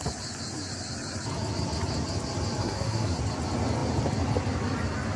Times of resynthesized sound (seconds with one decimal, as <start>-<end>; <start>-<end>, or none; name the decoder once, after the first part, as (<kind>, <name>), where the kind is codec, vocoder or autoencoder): 2.6-3.2 (codec, SNAC)